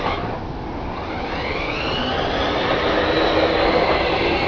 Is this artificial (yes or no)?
no